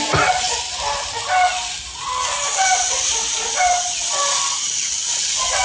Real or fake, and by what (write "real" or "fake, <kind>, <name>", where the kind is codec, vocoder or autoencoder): real